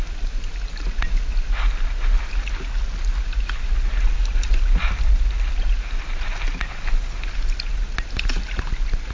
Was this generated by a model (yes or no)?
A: no